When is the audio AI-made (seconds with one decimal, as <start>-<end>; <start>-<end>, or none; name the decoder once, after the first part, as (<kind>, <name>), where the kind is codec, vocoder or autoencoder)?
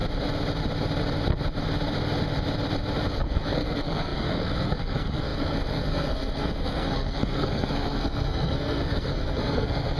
3.1-10.0 (codec, SNAC)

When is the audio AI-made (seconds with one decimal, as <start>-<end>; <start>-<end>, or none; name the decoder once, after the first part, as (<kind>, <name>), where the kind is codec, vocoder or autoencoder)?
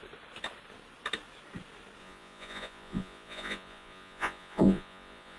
2.0-5.4 (vocoder, Vocos)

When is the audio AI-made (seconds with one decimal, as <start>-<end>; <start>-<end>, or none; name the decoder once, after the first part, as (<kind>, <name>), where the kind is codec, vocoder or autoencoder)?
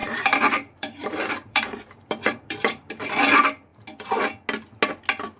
0.0-3.2 (vocoder, BigVGAN v2)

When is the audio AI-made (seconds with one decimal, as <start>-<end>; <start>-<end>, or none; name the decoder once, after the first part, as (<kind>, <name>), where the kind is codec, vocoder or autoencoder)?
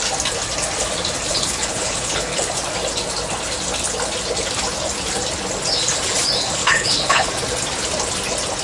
1.3-2.4 (codec, HILCodec); 6.6-7.3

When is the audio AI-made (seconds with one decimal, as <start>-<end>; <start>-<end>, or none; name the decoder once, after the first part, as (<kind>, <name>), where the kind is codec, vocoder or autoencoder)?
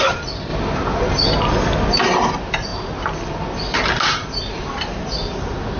0.0-0.5 (vocoder, BigVGAN v2); 2.0-2.7; 4.5-5.8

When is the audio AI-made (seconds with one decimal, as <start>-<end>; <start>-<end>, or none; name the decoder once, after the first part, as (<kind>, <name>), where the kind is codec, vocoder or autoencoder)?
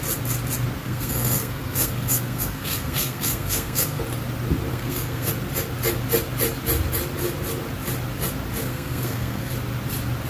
0.8-4.0 (codec, SNAC); 4.7-5.3; 8.6-9.5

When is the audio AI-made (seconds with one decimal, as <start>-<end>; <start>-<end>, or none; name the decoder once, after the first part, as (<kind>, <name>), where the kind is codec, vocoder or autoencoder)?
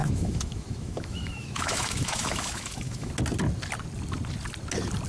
0.0-3.1 (autoencoder, DAC-VAE)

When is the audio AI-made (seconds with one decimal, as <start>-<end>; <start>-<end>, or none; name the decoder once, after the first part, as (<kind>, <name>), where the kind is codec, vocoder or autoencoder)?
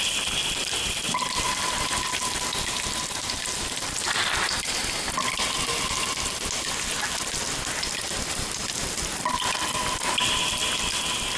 none